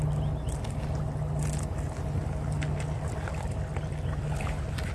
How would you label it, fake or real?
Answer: real